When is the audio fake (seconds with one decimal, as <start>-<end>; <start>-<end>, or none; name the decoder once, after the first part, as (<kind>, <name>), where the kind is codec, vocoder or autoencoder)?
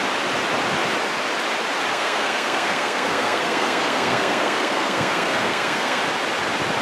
1.9-6.0 (codec, SNAC)